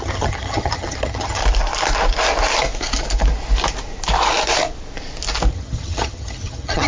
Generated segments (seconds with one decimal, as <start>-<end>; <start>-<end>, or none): 0.0-1.4; 5.5-6.9